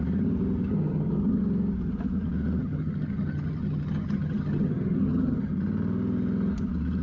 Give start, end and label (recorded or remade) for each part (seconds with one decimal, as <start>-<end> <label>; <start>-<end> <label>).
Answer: 0.0-0.7 recorded; 0.7-1.4 remade; 1.4-2.6 recorded; 2.6-5.5 remade; 5.5-7.0 recorded